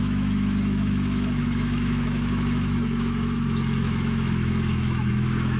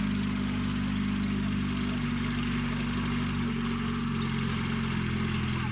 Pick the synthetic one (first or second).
first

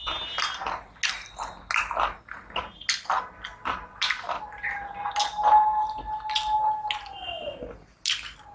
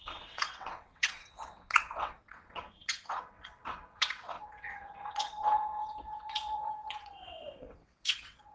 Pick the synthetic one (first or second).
second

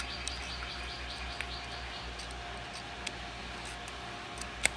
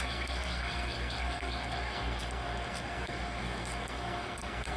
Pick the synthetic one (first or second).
second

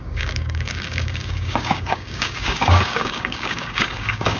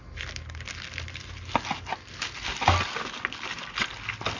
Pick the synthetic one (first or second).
first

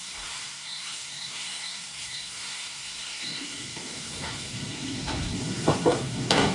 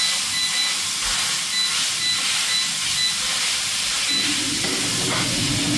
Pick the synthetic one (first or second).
first